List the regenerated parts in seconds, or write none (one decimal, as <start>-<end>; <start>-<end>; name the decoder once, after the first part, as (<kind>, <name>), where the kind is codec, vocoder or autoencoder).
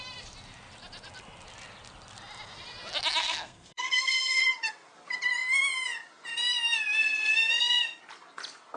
3.2-4.4 (codec, SNAC); 7.0-8.0